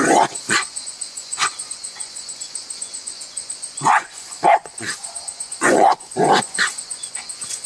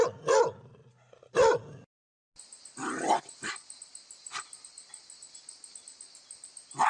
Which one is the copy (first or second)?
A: first